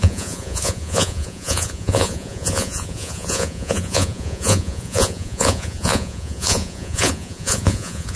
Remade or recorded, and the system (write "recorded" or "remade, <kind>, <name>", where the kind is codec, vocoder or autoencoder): remade, vocoder, Vocos